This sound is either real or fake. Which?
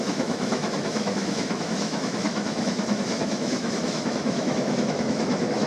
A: fake